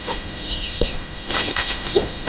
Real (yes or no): no